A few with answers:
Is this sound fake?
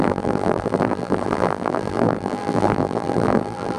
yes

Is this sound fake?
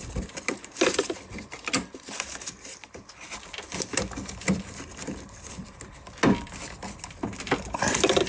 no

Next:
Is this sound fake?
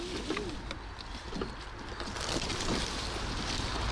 no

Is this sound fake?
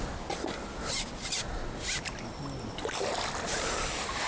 no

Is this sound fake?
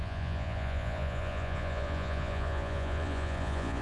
yes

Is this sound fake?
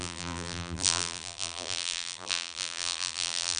yes